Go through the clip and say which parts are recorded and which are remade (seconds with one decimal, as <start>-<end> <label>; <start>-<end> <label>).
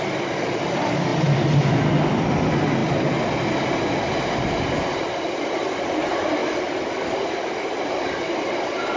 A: 0.0-9.0 recorded